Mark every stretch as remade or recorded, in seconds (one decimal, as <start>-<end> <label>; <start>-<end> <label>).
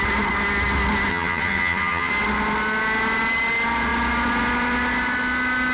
0.0-1.1 recorded; 1.1-2.1 remade; 2.1-5.7 recorded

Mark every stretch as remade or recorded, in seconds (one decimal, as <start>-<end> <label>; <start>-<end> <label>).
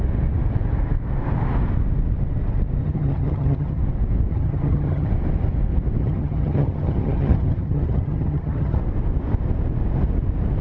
0.0-2.8 recorded; 2.8-3.8 remade; 3.8-4.3 recorded; 4.3-5.1 remade; 5.1-6.0 recorded; 6.0-8.8 remade; 8.8-10.6 recorded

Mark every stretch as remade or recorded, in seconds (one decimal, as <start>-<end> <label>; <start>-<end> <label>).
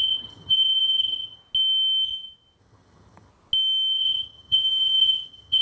0.0-1.4 remade; 1.4-2.6 recorded; 2.6-3.3 remade; 3.3-3.9 recorded; 3.9-5.6 remade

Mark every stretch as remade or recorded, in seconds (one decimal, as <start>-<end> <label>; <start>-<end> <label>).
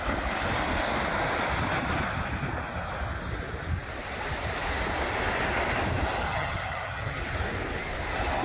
0.0-6.3 recorded; 6.3-7.2 remade; 7.2-8.4 recorded